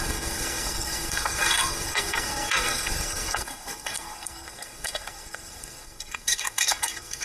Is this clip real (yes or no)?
no